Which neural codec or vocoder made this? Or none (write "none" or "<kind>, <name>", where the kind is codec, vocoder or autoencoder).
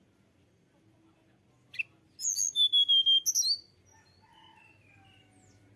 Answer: none